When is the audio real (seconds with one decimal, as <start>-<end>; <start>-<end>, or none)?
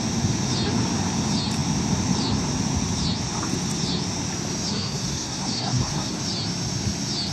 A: 0.0-4.7; 6.2-7.3